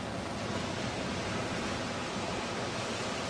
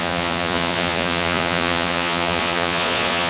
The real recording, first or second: first